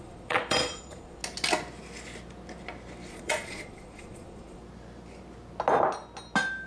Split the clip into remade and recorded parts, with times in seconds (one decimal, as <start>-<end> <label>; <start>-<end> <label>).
0.0-1.2 remade; 1.2-3.1 recorded; 3.1-4.6 remade; 4.6-6.7 recorded